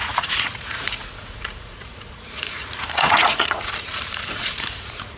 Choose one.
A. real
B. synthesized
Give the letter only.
B